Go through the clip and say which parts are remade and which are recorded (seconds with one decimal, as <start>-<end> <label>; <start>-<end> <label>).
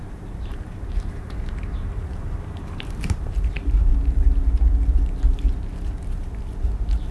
0.0-3.9 remade; 3.9-7.1 recorded